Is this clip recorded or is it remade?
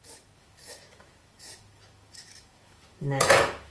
remade